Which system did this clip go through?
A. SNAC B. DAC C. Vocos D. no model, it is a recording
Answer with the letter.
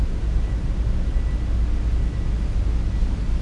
D